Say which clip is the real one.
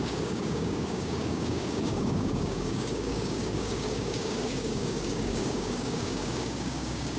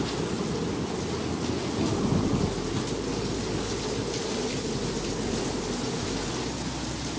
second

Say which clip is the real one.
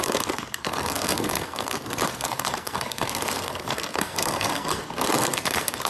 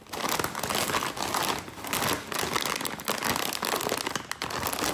second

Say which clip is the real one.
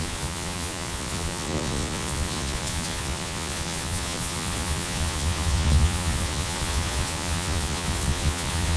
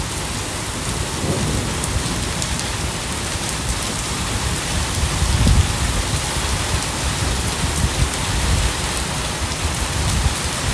second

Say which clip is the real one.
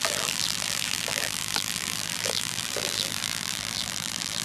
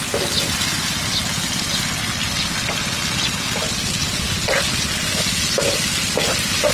second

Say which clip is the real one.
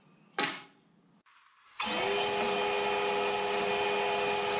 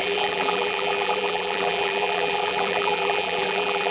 first